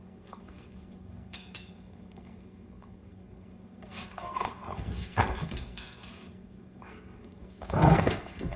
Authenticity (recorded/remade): remade